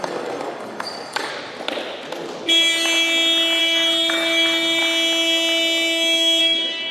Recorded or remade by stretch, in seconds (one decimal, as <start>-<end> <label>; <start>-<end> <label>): 0.0-1.3 remade; 1.3-3.6 recorded; 3.6-4.8 remade; 4.8-6.4 recorded; 6.4-6.9 remade